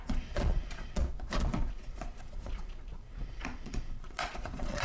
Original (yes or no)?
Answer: no